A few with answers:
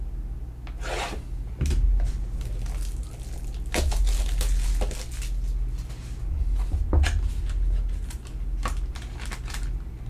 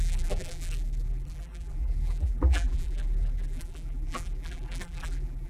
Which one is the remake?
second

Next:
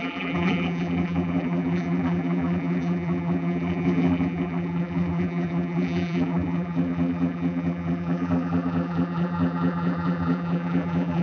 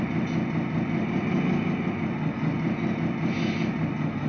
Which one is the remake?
first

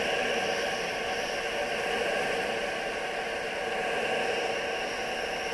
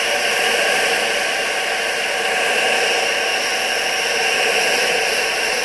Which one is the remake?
second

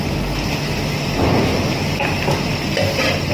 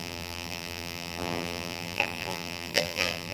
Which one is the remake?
second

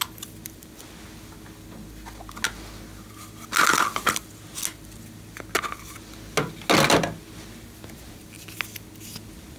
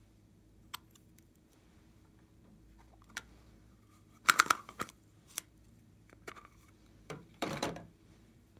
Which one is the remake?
second